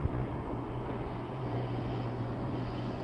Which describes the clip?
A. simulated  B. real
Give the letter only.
A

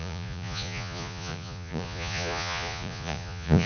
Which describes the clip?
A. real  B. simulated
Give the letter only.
B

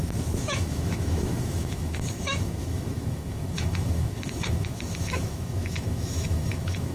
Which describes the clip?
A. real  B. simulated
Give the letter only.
B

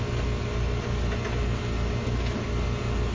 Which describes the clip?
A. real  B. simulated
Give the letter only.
A